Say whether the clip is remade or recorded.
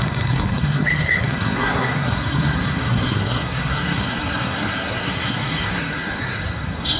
remade